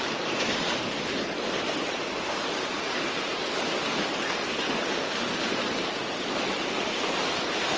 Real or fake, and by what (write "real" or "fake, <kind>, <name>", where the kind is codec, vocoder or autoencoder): real